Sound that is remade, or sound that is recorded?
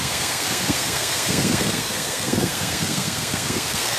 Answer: remade